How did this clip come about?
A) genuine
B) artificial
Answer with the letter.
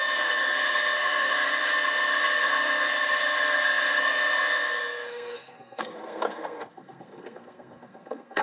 B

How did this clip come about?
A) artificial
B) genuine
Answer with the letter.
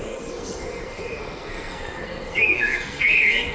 A